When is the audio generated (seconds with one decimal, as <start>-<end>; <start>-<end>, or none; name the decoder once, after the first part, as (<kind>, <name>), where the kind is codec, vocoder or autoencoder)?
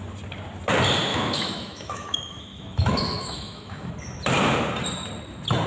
1.1-3.9 (autoencoder, DAC-VAE)